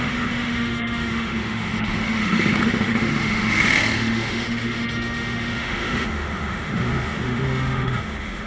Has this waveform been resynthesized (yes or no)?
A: yes